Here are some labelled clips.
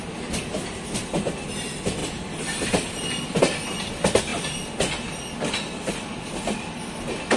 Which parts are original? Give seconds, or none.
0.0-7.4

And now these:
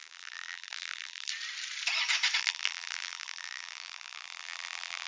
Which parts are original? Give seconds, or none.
1.3-2.4